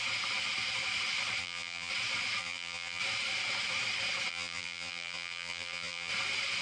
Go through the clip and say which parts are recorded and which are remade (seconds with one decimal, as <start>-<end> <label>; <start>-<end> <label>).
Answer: 0.0-1.4 recorded; 1.4-1.9 remade; 1.9-2.4 recorded; 2.4-3.0 remade; 3.0-4.3 recorded; 4.3-6.1 remade; 6.1-6.6 recorded